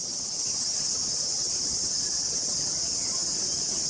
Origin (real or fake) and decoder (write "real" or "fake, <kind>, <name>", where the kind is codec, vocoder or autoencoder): fake, vocoder, HiFi-GAN